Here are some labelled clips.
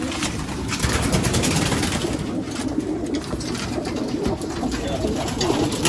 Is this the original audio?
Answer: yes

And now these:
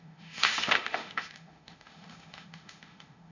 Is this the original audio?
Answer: no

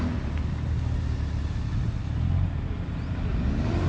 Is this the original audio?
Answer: yes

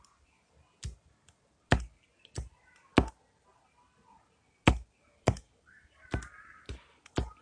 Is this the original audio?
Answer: yes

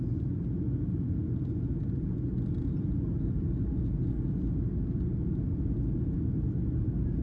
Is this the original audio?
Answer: yes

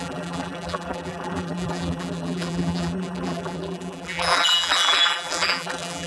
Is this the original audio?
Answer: no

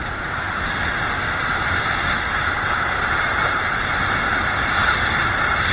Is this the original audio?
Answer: yes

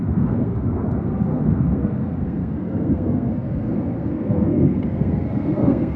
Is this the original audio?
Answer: no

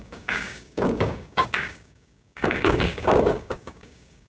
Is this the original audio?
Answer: no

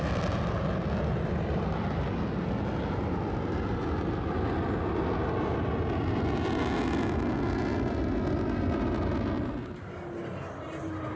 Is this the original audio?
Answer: yes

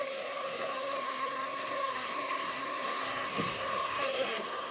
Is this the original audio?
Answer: no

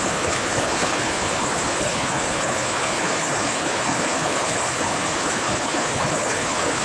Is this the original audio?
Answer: no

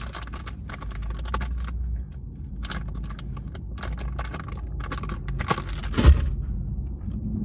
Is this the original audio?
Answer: yes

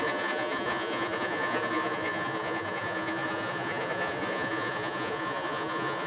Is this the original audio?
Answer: no